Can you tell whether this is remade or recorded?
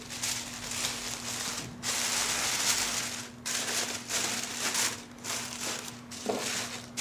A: recorded